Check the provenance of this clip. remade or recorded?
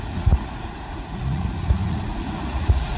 remade